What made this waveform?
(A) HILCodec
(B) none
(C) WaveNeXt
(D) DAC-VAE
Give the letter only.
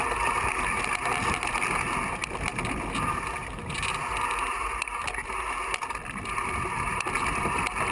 B